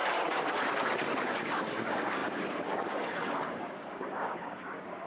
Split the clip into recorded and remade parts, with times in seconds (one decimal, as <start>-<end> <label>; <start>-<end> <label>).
0.0-1.2 recorded; 1.2-5.1 remade